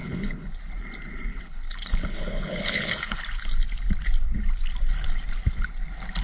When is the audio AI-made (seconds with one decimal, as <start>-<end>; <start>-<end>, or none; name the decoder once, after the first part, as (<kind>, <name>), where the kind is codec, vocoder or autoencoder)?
0.0-0.6 (codec, HILCodec); 1.3-3.2